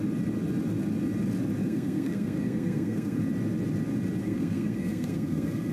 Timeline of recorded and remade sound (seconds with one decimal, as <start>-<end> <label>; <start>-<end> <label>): 0.0-1.6 recorded; 1.6-3.2 remade; 3.2-4.2 recorded; 4.2-5.7 remade